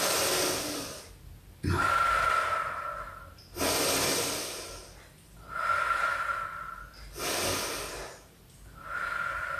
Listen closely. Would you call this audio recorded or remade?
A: recorded